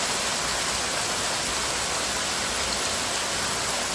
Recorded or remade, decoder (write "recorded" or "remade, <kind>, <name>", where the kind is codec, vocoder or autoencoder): recorded